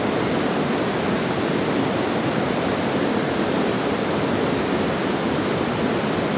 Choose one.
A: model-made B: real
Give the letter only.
B